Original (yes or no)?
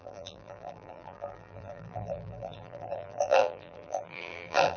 no